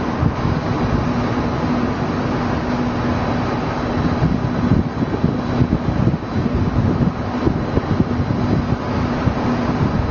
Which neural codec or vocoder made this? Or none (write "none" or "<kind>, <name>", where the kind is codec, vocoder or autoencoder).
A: none